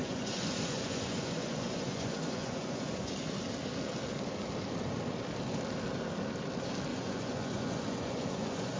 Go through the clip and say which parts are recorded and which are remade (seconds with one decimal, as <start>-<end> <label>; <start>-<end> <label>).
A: 0.0-3.1 remade; 3.1-6.9 recorded; 6.9-8.8 remade